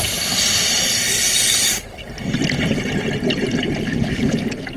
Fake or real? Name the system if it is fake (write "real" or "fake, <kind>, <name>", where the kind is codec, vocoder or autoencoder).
real